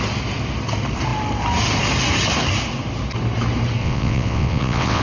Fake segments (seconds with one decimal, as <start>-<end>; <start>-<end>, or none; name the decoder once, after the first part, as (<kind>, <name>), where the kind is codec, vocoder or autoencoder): 3.8-5.0 (vocoder, WaveNeXt)